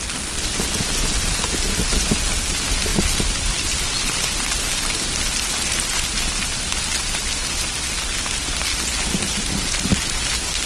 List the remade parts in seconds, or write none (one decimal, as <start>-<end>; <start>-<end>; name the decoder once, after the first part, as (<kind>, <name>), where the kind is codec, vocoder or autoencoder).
none